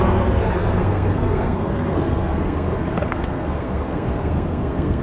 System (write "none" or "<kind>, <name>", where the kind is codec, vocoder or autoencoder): codec, SNAC